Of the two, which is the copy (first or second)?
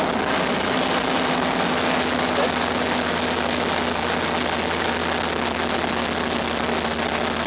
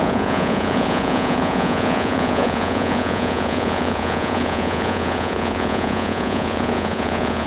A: second